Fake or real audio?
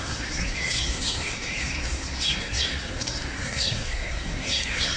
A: fake